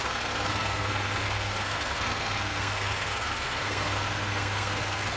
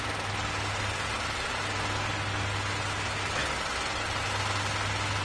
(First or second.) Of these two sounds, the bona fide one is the second